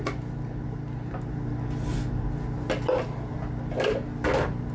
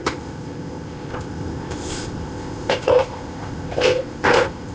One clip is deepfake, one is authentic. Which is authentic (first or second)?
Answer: first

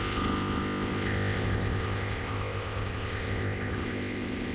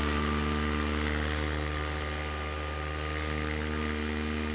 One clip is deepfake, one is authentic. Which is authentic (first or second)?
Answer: second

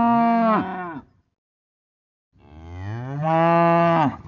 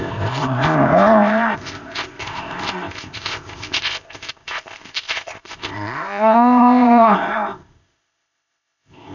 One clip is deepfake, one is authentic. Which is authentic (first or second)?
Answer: first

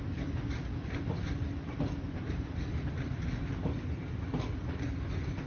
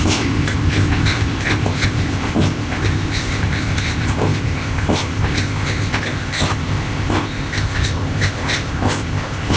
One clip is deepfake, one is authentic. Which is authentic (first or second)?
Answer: first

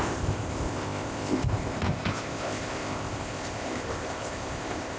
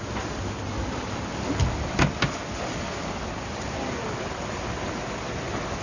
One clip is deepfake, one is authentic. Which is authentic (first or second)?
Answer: second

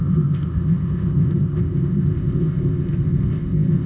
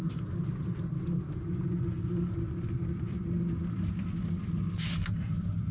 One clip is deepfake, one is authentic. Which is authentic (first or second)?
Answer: second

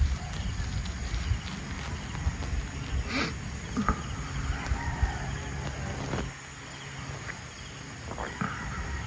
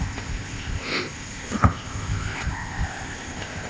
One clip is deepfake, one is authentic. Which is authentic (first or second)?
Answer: first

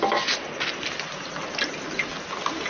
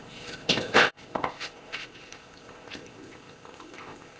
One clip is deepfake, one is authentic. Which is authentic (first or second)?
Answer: first